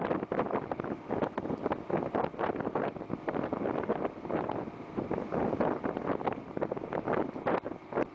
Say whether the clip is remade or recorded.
recorded